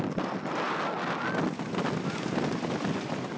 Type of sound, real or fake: real